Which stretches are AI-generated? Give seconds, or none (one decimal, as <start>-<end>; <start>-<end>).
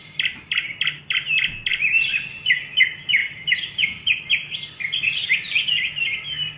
3.2-4.2